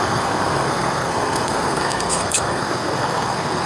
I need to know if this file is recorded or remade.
remade